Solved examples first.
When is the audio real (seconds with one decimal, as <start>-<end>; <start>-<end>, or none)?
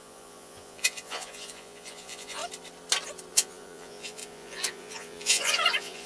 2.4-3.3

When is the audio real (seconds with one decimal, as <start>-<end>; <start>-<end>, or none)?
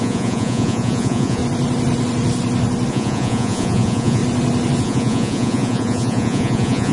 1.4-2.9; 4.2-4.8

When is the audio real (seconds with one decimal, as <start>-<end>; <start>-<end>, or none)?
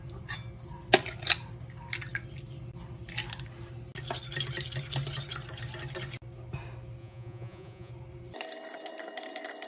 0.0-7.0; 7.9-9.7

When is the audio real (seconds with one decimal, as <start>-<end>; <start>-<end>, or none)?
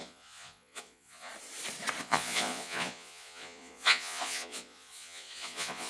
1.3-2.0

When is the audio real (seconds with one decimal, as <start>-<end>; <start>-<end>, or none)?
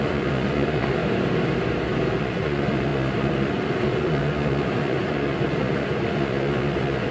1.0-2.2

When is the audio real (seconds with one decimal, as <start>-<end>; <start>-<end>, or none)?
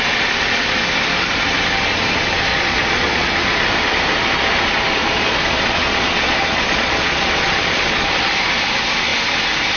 0.0-2.5; 3.3-5.0; 8.1-9.8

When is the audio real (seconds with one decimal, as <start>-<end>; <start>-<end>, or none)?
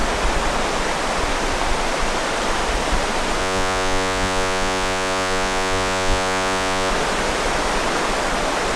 0.0-3.4; 6.9-8.8